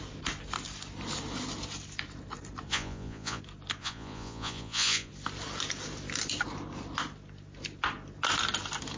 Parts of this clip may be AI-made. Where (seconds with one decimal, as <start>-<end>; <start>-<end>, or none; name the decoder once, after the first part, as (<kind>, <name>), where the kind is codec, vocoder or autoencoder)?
2.7-3.4 (vocoder, Vocos); 3.8-5.1

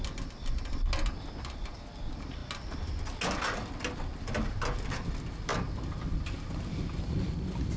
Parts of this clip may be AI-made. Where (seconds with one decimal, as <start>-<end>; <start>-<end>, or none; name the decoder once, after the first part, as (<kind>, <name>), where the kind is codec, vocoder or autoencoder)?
none

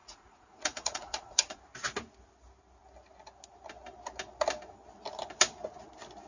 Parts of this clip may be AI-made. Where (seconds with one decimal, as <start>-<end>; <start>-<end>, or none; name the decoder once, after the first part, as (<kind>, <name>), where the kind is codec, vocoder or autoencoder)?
0.0-1.6 (vocoder, Vocos)

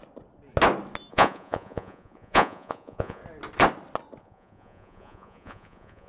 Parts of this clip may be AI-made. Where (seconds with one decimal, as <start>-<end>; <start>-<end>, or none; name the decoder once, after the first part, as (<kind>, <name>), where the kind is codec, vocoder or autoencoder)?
1.1-3.2 (vocoder, Vocos); 4.2-6.1

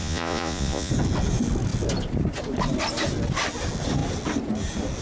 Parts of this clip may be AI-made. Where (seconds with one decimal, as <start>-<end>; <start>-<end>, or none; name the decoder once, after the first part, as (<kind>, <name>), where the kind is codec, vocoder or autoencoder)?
0.0-0.9 (vocoder, Vocos)